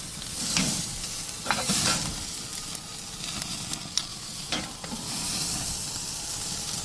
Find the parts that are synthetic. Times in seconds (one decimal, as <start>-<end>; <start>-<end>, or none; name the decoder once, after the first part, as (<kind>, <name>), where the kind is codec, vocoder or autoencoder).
4.1-4.6 (autoencoder, DAC-VAE)